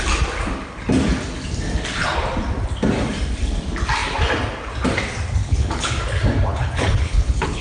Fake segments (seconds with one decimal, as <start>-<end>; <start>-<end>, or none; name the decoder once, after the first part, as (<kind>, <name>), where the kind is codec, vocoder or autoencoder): 5.4-6.0 (codec, HILCodec); 6.5-7.6